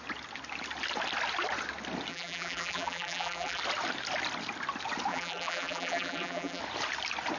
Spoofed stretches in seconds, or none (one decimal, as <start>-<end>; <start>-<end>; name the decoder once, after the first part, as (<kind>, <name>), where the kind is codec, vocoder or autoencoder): 2.1-3.6 (vocoder, BigVGAN v2); 5.1-6.6

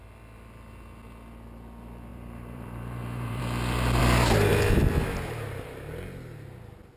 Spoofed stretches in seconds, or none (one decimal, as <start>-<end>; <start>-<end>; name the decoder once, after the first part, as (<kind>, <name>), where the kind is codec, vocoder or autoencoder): 2.1-3.4 (vocoder, BigVGAN v2)

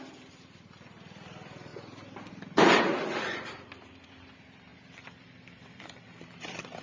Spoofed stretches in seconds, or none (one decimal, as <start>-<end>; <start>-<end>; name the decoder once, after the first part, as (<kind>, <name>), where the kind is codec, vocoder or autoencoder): 0.0-1.7 (vocoder, BigVGAN v2); 2.3-6.8

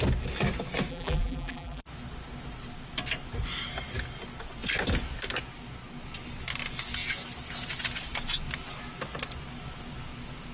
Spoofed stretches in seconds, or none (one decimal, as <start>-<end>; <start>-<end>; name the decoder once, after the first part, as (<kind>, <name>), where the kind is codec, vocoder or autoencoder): 0.9-1.8 (vocoder, BigVGAN v2)

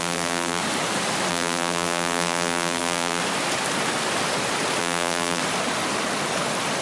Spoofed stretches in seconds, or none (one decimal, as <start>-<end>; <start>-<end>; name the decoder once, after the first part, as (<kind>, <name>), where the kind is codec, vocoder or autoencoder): 0.0-0.6 (vocoder, BigVGAN v2); 1.3-3.2; 4.8-5.4

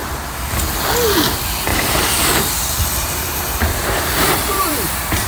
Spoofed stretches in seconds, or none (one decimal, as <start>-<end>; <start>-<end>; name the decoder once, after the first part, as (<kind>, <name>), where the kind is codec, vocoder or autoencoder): 1.7-5.3 (vocoder, BigVGAN v2)

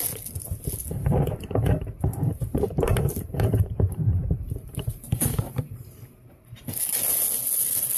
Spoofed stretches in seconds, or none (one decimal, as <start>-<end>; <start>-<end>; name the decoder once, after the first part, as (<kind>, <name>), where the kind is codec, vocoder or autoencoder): 2.1-6.6 (vocoder, BigVGAN v2)